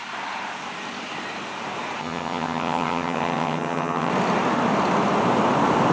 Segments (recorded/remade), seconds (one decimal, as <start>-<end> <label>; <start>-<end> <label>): 0.0-2.0 recorded; 2.0-4.1 remade; 4.1-5.9 recorded